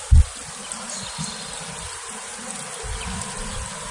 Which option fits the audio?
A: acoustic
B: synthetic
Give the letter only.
A